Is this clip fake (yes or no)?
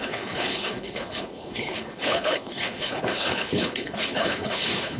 yes